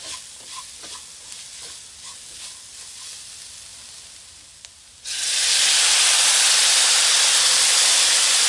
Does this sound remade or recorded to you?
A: recorded